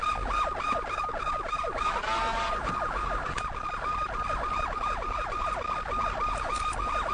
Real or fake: real